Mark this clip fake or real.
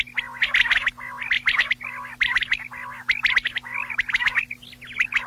real